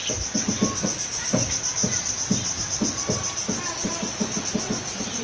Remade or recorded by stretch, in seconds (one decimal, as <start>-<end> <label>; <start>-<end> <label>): 0.0-5.2 recorded